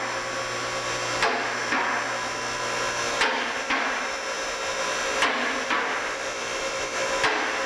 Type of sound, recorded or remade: recorded